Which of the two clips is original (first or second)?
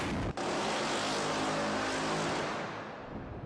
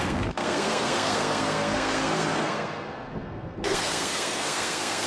first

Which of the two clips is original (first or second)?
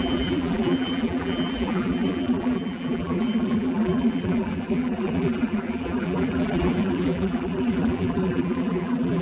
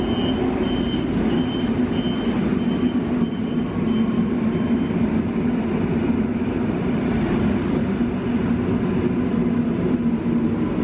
second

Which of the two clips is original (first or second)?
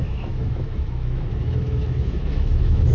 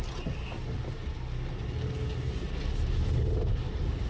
second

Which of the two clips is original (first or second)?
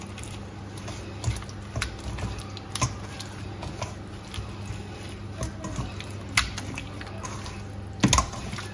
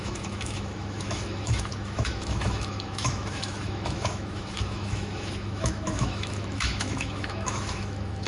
first